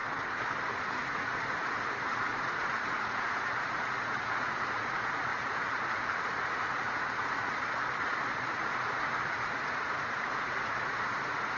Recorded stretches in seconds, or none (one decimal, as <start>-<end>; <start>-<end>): 0.0-0.7